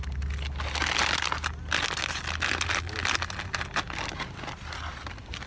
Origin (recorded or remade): recorded